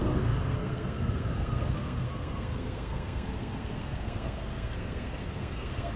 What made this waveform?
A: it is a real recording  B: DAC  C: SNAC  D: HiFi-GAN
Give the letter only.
C